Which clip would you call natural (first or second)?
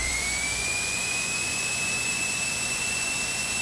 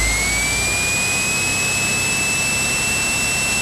second